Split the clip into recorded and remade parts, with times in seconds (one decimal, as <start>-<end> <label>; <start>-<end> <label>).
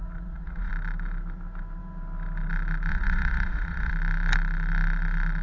0.0-0.7 remade; 0.7-2.9 recorded; 2.9-3.9 remade; 3.9-5.4 recorded